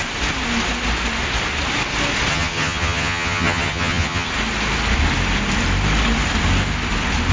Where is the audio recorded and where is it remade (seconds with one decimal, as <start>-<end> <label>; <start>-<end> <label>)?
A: 0.0-2.3 recorded; 2.3-4.3 remade; 4.3-7.3 recorded